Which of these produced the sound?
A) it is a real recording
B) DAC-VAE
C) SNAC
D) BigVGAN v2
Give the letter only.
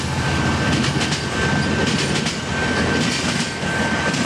A